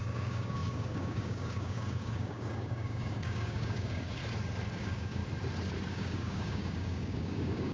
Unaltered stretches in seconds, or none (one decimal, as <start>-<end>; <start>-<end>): 4.2-4.8; 5.2-5.9